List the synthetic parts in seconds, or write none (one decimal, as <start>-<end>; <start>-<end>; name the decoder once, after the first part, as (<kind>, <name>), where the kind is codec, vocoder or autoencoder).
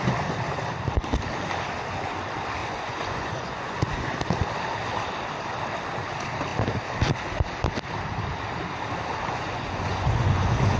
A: 2.6-4.1 (vocoder, Vocos); 9.3-10.8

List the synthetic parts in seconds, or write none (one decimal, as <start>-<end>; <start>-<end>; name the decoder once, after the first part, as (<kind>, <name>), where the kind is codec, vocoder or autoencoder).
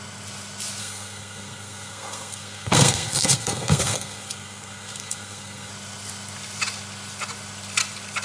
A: 0.8-5.7 (codec, SNAC)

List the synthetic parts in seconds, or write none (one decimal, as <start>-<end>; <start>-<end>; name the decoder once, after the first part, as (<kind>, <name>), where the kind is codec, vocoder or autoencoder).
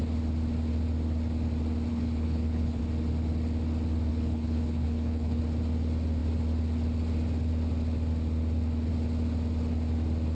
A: 1.9-2.8 (codec, HILCodec); 4.1-5.4